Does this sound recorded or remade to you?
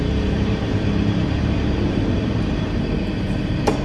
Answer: remade